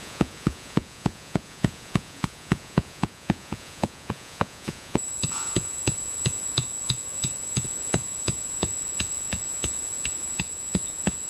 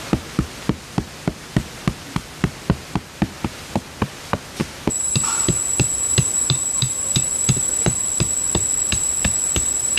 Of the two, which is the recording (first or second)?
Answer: second